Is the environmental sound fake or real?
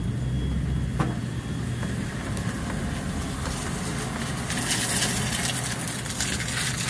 real